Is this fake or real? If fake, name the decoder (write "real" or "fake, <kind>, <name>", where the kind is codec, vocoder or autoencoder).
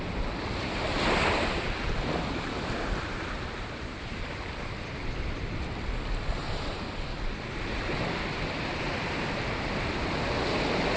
real